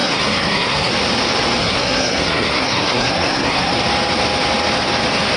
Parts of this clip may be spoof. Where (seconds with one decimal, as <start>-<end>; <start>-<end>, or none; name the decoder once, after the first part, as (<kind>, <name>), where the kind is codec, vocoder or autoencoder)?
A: 0.0-0.9 (codec, SNAC); 1.6-3.7